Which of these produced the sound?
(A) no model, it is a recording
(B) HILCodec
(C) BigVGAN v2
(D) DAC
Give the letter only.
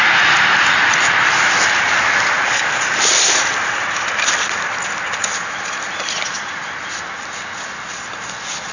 C